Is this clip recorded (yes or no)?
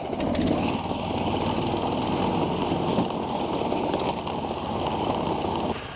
yes